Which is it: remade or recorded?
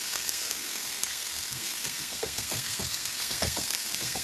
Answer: remade